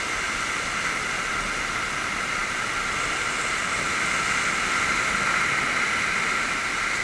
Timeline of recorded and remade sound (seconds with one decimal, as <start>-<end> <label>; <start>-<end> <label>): 0.0-7.0 recorded